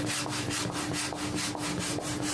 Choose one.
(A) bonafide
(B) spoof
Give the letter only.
A